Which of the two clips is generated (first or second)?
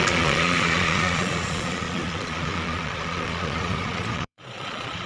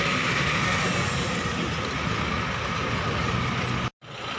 first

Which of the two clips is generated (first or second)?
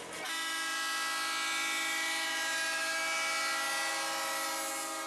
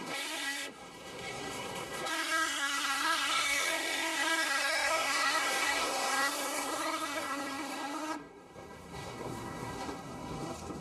second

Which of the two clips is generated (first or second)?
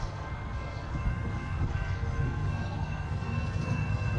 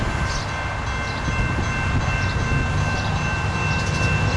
first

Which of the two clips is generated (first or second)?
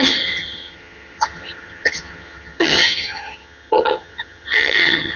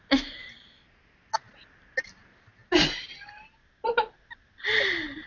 first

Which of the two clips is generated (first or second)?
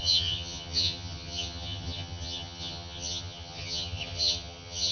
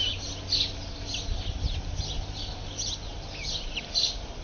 first